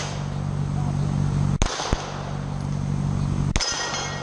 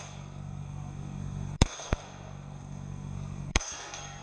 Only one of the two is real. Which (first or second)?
first